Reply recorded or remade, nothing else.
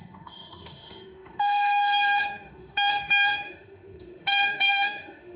remade